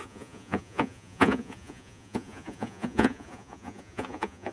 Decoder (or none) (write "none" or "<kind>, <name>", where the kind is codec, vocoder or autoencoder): vocoder, Vocos